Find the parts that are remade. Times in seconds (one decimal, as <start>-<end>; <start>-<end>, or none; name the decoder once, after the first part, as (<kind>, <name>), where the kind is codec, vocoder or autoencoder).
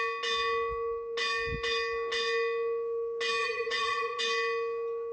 3.4-4.2 (vocoder, Vocos)